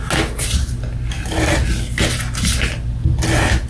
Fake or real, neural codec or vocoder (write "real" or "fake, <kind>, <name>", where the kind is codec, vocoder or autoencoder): real